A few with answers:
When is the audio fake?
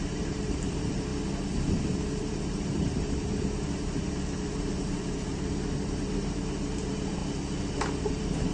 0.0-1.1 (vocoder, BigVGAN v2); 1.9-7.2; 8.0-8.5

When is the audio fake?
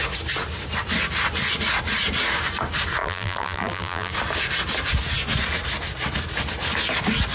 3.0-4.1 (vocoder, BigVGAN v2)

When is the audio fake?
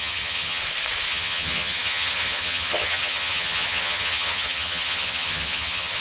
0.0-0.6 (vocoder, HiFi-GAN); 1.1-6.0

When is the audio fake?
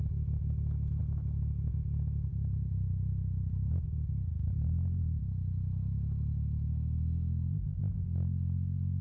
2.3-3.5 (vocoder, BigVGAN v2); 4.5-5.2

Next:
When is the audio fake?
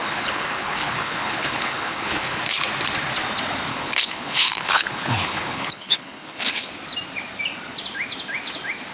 0.0-2.4 (codec, HILCodec); 3.7-6.7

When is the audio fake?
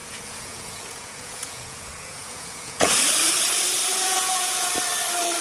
0.0-2.9 (vocoder, Vocos); 3.9-4.7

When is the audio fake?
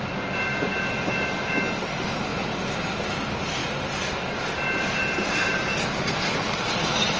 none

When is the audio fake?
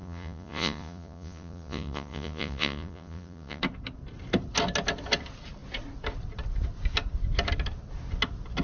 0.0-3.6 (vocoder, Vocos)